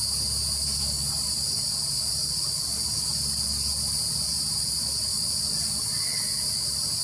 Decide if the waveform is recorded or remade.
recorded